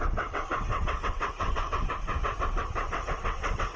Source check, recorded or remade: remade